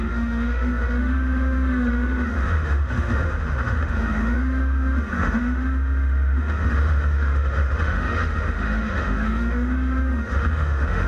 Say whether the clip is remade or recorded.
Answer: remade